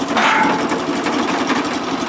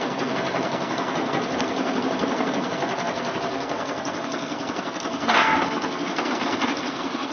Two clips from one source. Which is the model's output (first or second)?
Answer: second